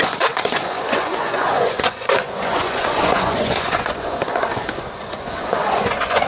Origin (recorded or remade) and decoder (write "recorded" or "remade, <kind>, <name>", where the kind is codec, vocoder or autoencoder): remade, vocoder, Vocos